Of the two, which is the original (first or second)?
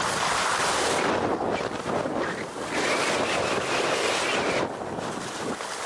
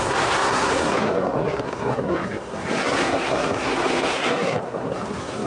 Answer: first